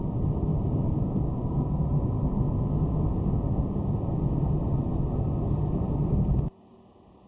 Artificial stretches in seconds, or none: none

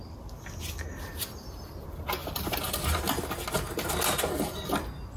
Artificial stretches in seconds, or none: none

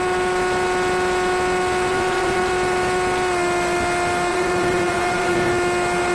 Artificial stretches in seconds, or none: 1.9-2.5 (vocoder, Vocos); 4.3-5.5

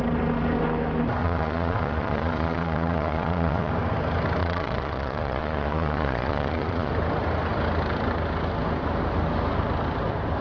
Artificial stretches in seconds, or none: 1.2-3.7 (vocoder, Vocos); 4.4-6.9

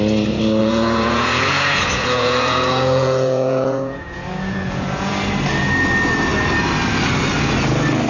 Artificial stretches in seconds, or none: 0.6-5.1 (vocoder, Vocos)